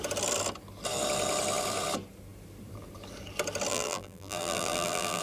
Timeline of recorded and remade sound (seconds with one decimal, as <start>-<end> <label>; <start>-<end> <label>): 0.0-3.7 recorded; 3.7-5.2 remade